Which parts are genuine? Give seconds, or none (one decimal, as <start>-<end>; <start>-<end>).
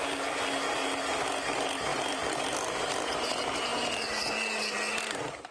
0.0-5.5